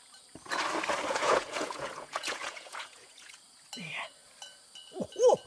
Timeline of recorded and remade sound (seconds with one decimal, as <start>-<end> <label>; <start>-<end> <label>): 0.0-1.1 recorded; 1.1-3.4 remade; 3.4-5.5 recorded